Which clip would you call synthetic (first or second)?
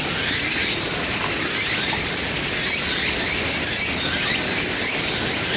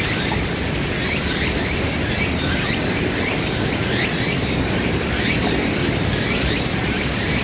second